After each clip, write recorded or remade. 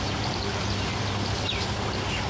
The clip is recorded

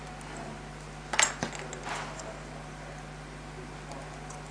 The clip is recorded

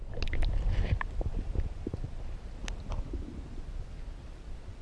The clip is recorded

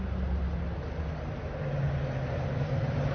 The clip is recorded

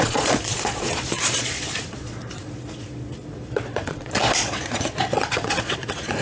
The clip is remade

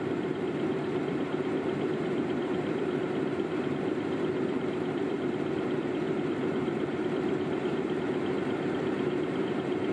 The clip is remade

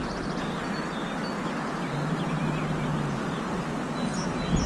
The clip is recorded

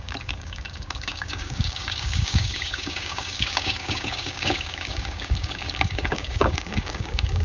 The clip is remade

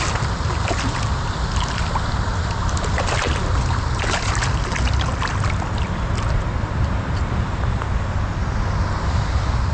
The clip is recorded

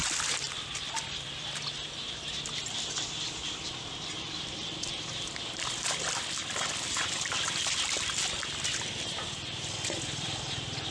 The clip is remade